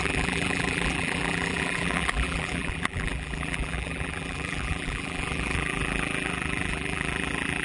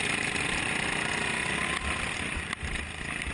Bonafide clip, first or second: second